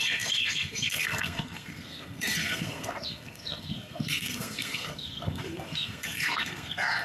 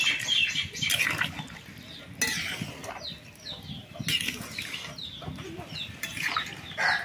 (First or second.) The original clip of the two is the second